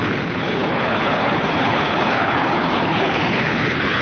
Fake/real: fake